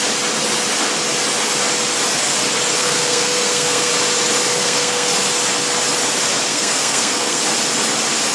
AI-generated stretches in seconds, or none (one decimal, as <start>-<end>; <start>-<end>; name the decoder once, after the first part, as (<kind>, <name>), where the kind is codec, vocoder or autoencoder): 2.8-3.9 (codec, SNAC); 4.5-5.1; 6.5-7.4